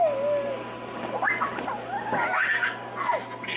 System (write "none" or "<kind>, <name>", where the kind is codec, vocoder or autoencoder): none